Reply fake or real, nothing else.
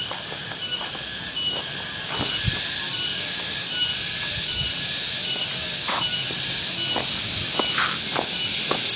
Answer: real